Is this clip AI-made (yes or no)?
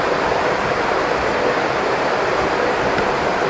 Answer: no